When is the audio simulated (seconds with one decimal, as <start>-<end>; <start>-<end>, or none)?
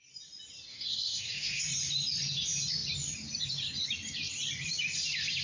0.7-1.6